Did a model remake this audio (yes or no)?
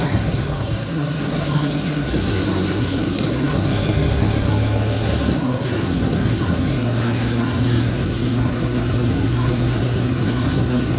yes